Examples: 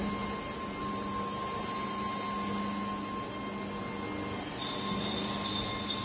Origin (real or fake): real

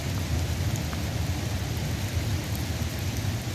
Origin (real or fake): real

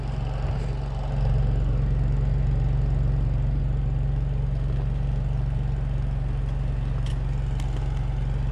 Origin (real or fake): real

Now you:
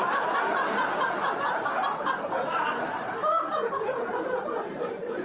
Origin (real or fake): fake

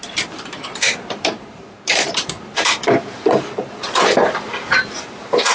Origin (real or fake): fake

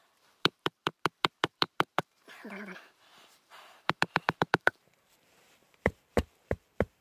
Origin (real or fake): fake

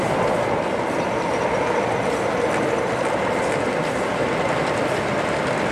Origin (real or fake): real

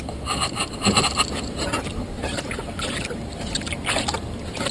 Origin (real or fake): fake